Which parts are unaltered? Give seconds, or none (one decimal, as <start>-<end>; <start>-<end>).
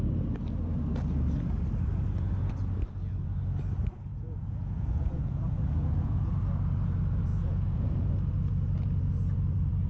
0.0-4.1; 6.3-7.3; 8.1-9.9